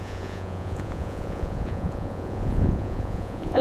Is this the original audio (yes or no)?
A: no